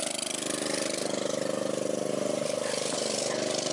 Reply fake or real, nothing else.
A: real